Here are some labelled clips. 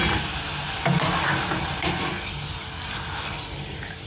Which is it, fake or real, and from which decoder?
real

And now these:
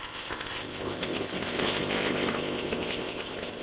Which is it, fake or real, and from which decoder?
fake, codec, ZipCodec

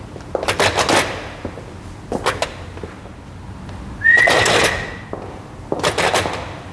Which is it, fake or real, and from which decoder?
real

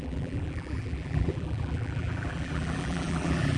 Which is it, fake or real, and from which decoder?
fake, vocoder, BigVGAN v2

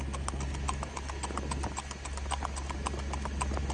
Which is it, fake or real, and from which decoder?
real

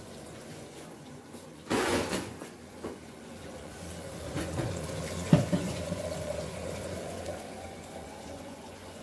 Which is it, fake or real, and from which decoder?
fake, vocoder, Vocos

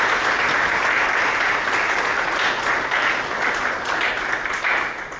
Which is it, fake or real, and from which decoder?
real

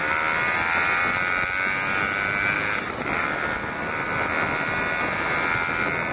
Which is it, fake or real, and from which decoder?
real